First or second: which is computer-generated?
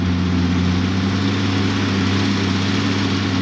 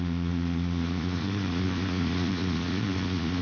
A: second